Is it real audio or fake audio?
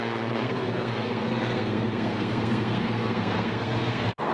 fake